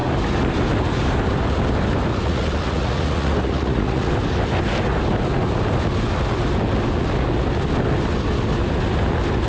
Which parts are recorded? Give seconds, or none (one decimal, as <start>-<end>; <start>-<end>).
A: 0.0-2.1; 4.1-9.5